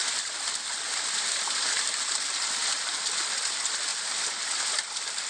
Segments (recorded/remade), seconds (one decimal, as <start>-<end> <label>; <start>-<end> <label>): 0.0-5.3 recorded